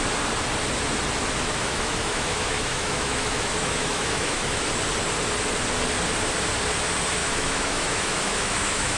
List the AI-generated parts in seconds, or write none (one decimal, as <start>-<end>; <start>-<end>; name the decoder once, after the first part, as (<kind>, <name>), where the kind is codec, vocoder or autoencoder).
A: 1.6-4.7 (autoencoder, DAC-VAE); 7.2-9.0

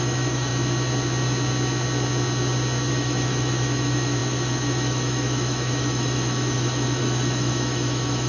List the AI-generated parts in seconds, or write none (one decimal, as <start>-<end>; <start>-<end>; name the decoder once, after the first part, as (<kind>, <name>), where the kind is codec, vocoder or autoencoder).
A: 0.0-0.5 (autoencoder, DAC-VAE); 2.9-8.3

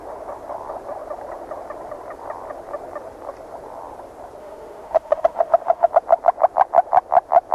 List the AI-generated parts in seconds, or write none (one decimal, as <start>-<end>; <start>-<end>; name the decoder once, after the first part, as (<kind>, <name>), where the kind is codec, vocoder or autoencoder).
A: 4.4-5.9 (autoencoder, DAC-VAE)

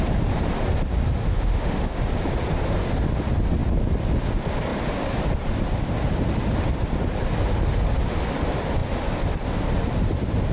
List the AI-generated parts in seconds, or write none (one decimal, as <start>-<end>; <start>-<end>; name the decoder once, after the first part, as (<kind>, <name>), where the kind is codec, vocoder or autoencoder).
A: 1.2-2.0 (autoencoder, DAC-VAE)

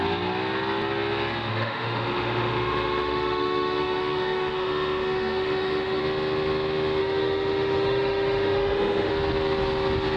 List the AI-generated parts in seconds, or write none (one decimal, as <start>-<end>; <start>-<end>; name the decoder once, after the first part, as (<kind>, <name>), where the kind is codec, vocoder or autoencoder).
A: 1.5-6.0 (autoencoder, DAC-VAE); 7.0-9.1

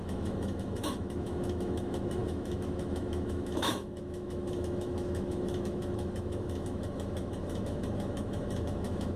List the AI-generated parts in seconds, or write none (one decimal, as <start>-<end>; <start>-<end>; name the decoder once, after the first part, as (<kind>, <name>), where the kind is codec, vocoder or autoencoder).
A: 0.0-9.2 (autoencoder, DAC-VAE)

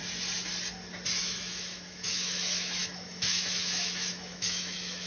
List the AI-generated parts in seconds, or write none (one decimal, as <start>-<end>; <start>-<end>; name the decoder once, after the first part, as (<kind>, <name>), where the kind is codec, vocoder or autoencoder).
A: 1.2-5.1 (autoencoder, DAC-VAE)

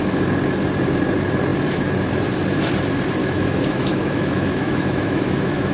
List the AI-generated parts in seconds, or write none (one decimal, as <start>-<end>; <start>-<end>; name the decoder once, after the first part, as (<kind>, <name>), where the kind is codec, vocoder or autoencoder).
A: 3.2-5.7 (autoencoder, DAC-VAE)